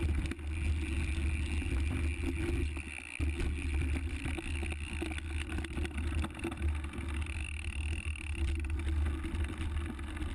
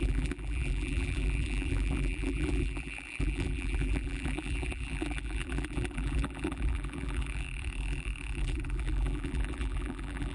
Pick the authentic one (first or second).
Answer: first